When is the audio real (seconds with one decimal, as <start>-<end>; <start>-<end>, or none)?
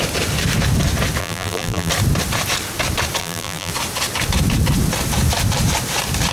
0.0-1.2; 1.9-3.2; 3.7-6.3